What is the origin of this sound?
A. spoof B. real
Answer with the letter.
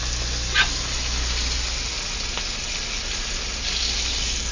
B